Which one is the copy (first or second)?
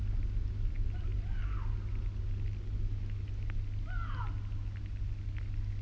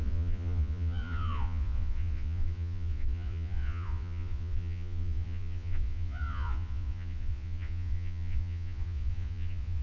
second